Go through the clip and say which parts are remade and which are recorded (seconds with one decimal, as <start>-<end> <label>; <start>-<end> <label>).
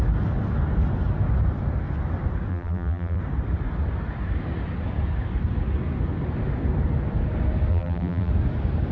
0.0-2.5 recorded; 2.5-3.2 remade; 3.2-7.7 recorded; 7.7-8.3 remade; 8.3-8.9 recorded